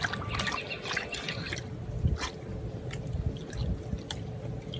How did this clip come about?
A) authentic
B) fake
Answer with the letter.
A